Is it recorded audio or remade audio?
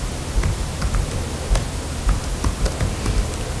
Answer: recorded